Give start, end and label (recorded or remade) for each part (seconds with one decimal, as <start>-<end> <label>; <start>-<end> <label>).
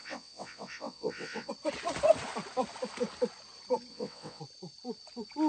0.0-1.5 remade; 1.5-3.9 recorded; 3.9-4.4 remade; 4.4-5.5 recorded